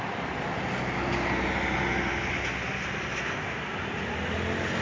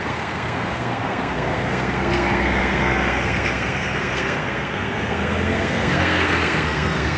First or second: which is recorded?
first